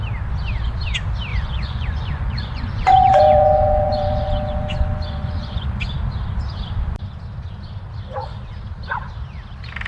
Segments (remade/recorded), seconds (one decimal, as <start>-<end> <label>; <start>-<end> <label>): 0.0-1.3 recorded; 1.3-5.8 remade; 5.8-9.9 recorded